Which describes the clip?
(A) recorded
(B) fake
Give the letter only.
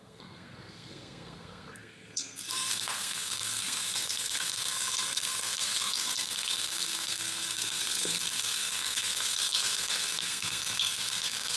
B